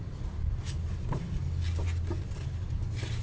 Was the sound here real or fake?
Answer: real